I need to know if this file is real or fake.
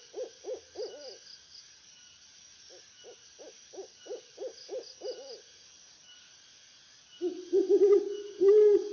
real